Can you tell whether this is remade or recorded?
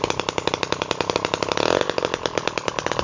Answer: recorded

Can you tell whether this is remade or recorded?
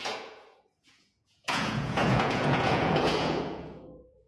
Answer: remade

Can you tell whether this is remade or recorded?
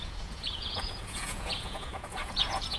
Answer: remade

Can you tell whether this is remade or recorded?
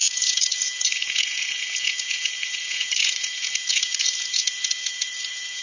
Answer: remade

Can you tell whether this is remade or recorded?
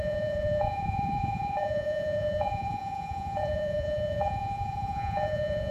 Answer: remade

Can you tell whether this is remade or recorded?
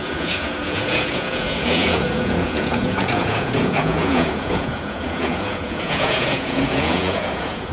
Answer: remade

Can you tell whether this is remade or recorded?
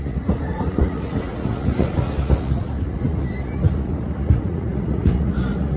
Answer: remade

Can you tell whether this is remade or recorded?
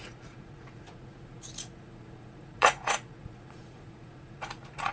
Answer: remade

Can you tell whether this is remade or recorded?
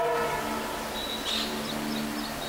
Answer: recorded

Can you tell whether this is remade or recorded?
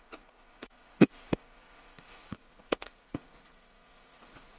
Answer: remade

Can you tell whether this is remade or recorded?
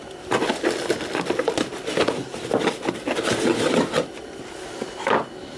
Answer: recorded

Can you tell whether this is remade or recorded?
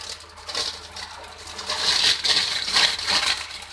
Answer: recorded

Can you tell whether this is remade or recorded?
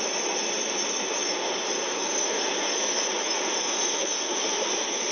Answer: recorded